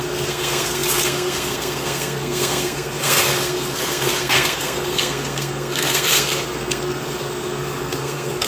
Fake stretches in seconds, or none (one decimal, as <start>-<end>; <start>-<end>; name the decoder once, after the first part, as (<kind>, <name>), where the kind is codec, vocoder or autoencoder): 0.0-8.5 (codec, SNAC)